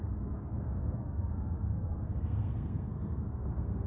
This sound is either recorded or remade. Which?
remade